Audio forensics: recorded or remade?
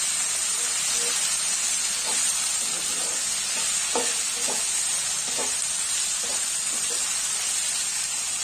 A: recorded